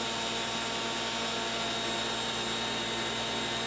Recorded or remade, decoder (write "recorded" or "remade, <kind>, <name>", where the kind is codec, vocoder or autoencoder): recorded